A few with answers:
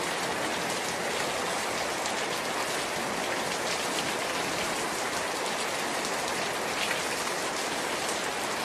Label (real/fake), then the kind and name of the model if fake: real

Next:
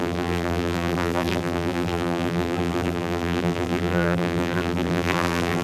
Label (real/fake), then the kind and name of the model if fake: fake, vocoder, BigVGAN v2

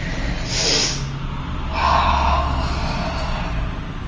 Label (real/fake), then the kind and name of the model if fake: real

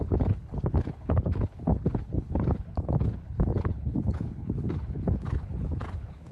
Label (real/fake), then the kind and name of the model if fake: fake, codec, HILCodec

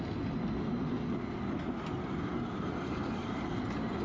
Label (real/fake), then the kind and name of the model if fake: real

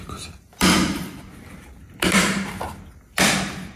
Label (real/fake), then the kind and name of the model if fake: fake, vocoder, BigVGAN v2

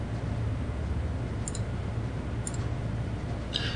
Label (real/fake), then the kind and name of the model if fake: real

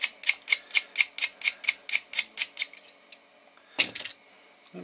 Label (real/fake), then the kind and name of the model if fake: real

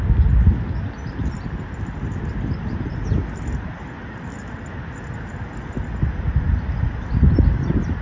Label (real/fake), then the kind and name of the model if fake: real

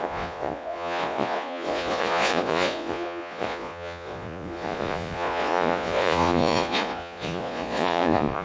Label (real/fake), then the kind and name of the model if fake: fake, vocoder, Vocos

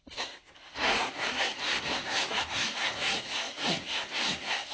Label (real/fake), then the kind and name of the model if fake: fake, codec, SNAC